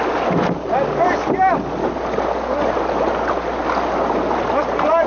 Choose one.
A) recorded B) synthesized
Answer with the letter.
A